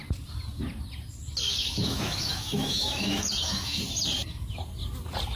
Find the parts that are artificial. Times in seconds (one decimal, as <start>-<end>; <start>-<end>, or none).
1.5-3.8